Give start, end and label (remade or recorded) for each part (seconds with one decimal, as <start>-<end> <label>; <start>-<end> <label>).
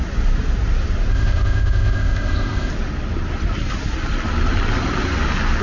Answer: 0.0-1.1 recorded; 1.1-2.7 remade; 2.7-5.6 recorded